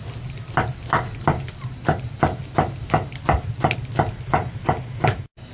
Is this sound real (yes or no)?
yes